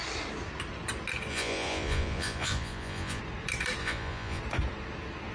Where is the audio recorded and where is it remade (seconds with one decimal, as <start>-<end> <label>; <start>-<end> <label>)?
0.0-1.3 recorded; 1.3-3.2 remade; 3.2-3.8 recorded; 3.8-4.4 remade; 4.4-5.3 recorded